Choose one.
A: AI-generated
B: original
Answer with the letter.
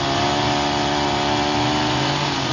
B